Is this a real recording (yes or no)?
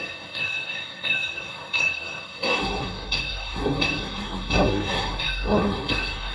no